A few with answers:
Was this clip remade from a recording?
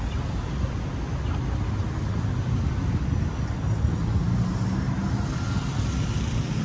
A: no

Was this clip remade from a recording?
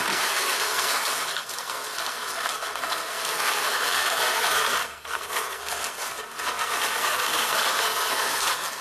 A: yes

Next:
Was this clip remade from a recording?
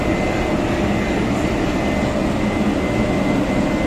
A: no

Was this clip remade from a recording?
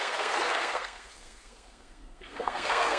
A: yes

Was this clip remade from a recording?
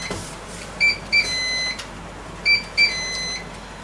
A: no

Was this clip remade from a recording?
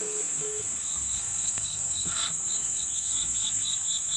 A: yes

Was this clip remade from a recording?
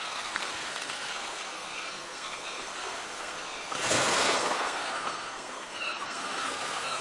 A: yes